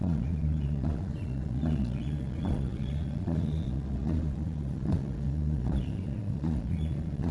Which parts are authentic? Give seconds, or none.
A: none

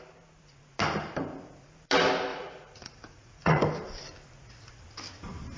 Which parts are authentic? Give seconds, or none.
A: 0.0-2.3; 3.6-5.6

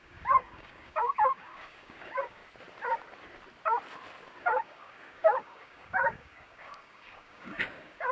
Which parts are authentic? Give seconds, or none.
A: 2.4-4.4

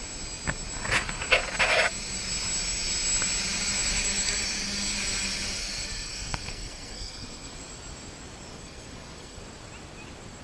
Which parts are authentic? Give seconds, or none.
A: 0.0-5.6; 7.6-8.5; 9.4-10.4

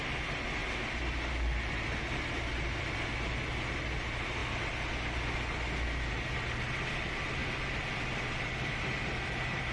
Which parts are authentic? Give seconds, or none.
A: 0.6-2.3; 4.4-6.1

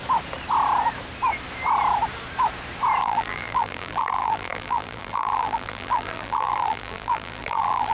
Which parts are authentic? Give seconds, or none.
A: 0.0-3.0